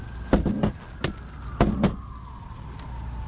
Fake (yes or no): no